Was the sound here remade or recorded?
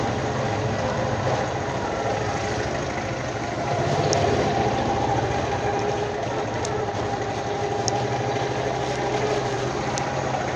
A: recorded